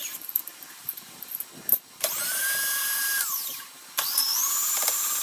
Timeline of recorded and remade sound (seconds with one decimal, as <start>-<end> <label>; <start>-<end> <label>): 0.0-1.5 remade; 1.5-2.2 recorded; 2.2-5.2 remade